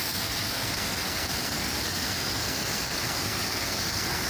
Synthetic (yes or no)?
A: yes